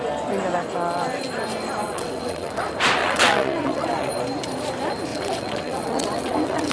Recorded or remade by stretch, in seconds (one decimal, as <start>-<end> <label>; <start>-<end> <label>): 0.0-1.8 recorded; 1.8-2.6 remade; 2.6-3.0 recorded; 3.0-4.1 remade; 4.1-5.1 recorded; 5.1-6.7 remade